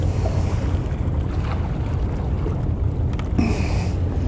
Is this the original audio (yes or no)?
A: yes